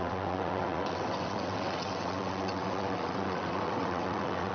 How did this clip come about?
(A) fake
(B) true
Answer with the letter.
A